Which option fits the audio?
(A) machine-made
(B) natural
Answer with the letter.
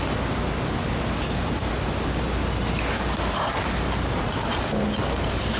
B